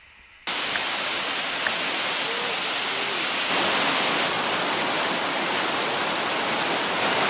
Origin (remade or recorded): recorded